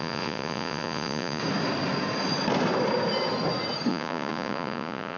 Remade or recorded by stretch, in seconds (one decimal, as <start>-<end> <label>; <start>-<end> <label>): 0.0-1.4 remade; 1.4-3.9 recorded; 3.9-5.2 remade